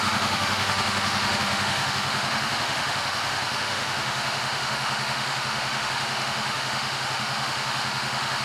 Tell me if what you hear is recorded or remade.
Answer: remade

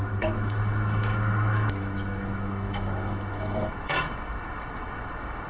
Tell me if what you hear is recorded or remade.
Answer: remade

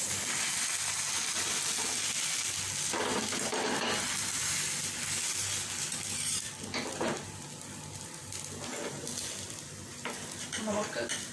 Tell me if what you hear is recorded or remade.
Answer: recorded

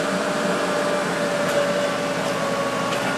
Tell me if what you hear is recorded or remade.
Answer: recorded